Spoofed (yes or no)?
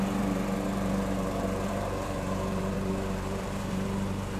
yes